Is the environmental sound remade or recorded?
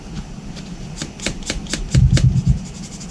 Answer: recorded